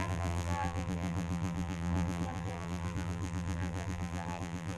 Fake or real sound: fake